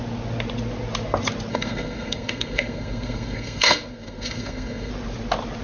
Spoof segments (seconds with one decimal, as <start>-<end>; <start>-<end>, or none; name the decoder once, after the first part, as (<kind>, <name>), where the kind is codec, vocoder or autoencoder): 1.5-4.9 (codec, SNAC)